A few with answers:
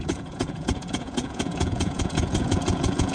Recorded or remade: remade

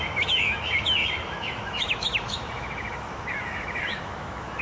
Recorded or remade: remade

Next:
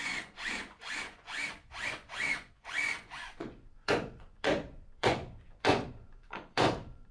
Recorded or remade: remade